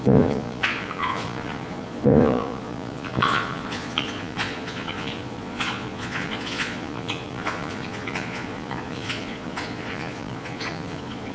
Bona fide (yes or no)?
no